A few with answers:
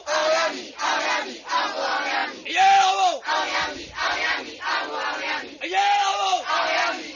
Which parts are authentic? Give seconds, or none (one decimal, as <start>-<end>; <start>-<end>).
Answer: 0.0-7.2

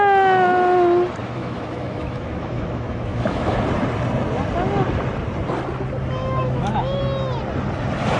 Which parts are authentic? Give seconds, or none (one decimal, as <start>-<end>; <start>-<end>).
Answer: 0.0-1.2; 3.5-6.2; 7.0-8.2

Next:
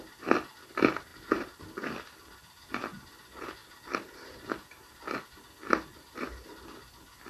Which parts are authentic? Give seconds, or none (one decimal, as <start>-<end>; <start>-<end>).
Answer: 0.0-1.1; 1.6-7.3

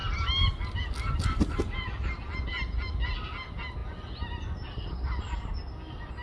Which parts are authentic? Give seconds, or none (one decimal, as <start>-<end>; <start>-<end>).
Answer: 0.0-6.2

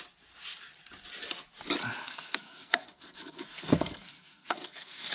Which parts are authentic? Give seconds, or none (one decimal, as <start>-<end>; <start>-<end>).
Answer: 0.0-2.0

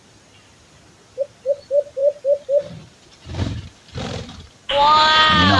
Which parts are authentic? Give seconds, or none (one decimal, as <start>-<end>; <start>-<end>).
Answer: 0.0-1.6; 2.0-3.4

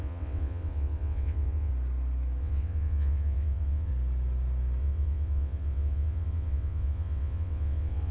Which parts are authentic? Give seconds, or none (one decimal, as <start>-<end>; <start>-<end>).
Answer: 1.7-2.4; 3.9-4.8